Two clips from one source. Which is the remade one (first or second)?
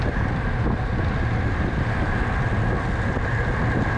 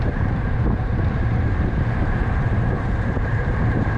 second